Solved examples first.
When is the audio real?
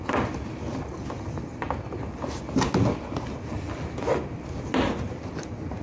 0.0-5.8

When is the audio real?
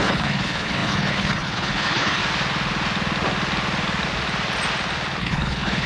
2.2-5.2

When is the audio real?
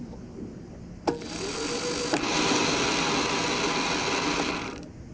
0.0-5.1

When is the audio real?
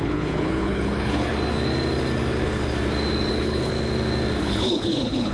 1.3-3.3; 3.7-4.4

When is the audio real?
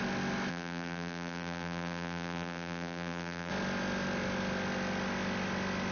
0.0-0.5; 3.5-5.9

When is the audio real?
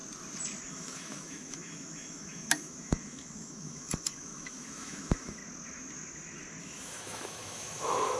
0.0-0.7; 5.4-6.6